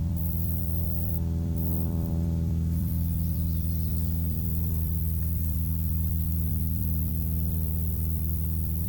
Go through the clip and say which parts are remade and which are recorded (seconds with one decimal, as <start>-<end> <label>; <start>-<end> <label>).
0.0-8.9 remade